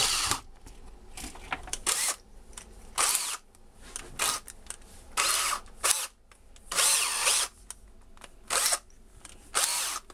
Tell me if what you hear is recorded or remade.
recorded